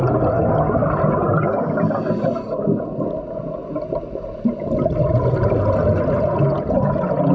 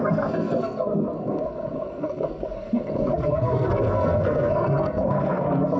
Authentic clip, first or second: first